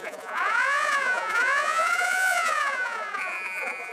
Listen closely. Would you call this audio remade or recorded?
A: remade